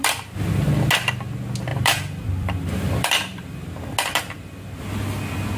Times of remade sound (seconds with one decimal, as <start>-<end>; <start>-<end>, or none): 0.0-0.7; 1.7-3.7

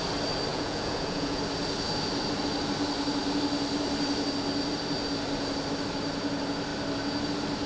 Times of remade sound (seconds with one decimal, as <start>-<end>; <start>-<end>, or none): 0.5-1.4

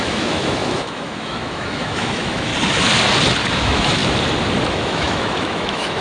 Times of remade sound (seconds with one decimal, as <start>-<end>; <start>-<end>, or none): 0.0-2.5; 3.5-4.0; 4.7-6.0

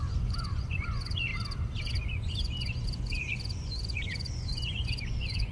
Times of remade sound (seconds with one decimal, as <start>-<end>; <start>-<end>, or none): 0.0-1.3; 1.8-5.5

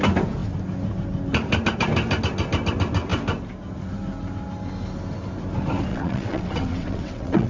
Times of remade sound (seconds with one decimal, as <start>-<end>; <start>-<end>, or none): 5.9-7.5